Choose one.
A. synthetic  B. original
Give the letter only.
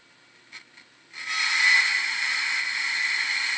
B